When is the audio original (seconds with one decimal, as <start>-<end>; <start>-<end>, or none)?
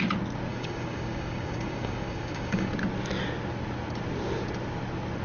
0.0-0.5; 2.7-5.2